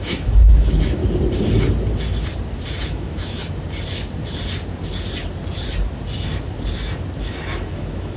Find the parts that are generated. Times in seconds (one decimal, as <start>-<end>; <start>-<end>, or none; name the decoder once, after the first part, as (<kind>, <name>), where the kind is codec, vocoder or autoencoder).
0.0-1.0 (autoencoder, DAC-VAE); 2.8-3.4; 7.2-8.2